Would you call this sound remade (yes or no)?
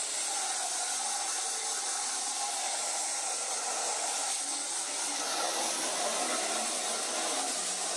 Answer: no